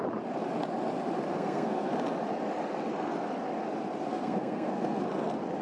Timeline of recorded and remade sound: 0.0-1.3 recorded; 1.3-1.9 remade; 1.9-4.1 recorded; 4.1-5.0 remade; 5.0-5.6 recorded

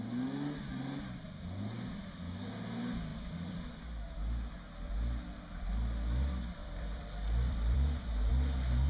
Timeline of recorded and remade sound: 0.0-3.1 recorded; 3.1-3.7 remade; 3.7-6.6 recorded; 6.6-8.3 remade; 8.3-8.9 recorded

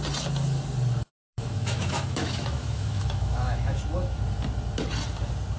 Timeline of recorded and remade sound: 0.0-1.1 recorded; 1.1-3.8 remade; 3.8-5.6 recorded